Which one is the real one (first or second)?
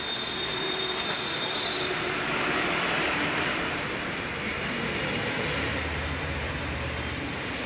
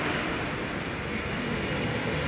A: second